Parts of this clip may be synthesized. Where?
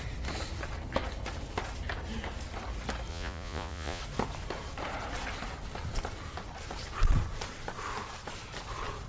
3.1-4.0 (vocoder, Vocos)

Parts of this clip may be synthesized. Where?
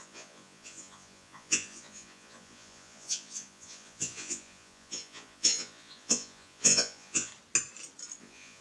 0.0-7.3 (vocoder, Vocos); 8.2-8.6